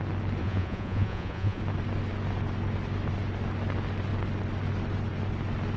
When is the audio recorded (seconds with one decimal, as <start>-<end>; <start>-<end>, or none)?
0.0-0.4; 1.6-5.8